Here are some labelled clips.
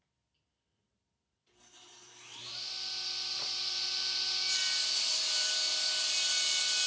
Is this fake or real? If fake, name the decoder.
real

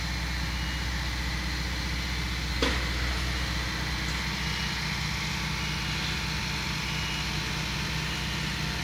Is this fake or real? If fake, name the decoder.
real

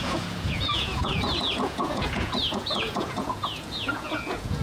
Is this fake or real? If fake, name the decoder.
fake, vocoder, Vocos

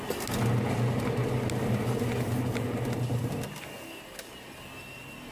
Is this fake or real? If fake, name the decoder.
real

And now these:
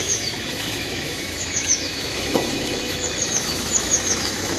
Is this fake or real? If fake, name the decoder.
fake, autoencoder, DAC-VAE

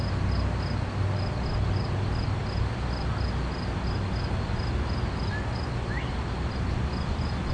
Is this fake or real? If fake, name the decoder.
real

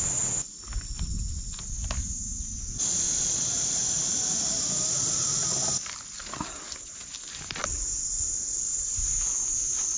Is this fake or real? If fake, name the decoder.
real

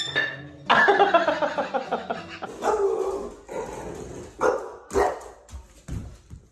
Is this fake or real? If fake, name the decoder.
real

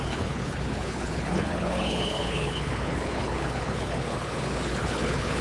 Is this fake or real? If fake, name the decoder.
fake, codec, HILCodec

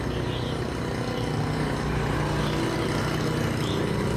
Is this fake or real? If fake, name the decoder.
real